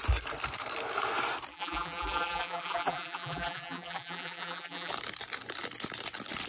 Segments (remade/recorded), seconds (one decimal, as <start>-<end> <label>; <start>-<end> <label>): 0.0-1.5 recorded; 1.5-4.9 remade; 4.9-6.5 recorded